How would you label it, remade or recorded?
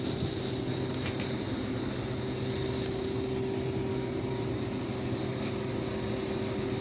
recorded